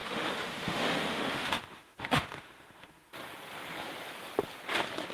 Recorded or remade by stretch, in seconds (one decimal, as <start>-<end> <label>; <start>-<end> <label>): 0.0-3.1 remade; 3.1-5.1 recorded